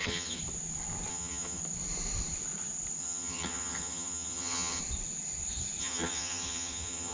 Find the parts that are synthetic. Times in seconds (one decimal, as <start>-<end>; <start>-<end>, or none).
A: 0.0-0.4; 1.1-1.6; 3.0-4.8; 5.8-7.1